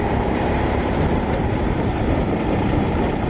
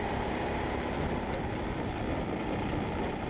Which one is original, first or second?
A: second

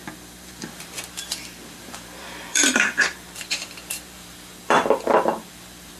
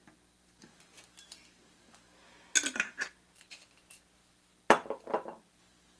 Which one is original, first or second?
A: second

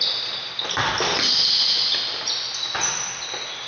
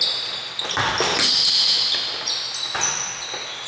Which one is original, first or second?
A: second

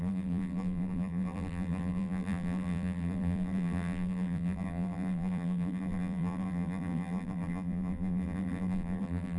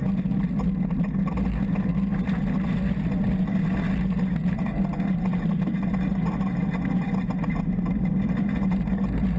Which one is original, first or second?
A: second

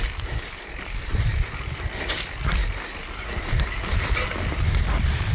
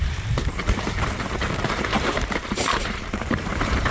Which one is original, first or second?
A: first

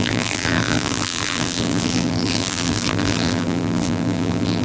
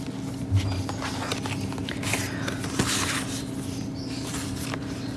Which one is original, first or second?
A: second